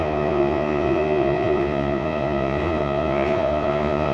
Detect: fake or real fake